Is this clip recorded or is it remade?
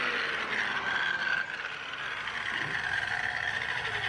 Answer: recorded